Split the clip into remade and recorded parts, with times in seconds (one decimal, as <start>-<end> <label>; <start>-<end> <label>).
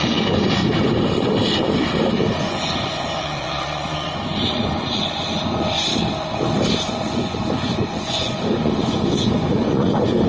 0.0-0.6 remade; 0.6-2.4 recorded; 2.4-5.9 remade; 5.9-7.0 recorded; 7.0-10.3 remade